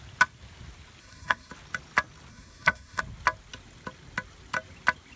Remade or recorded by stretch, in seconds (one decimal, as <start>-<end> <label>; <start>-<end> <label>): 0.0-1.0 recorded; 1.0-1.5 remade; 1.5-2.3 recorded; 2.3-3.0 remade; 3.0-5.2 recorded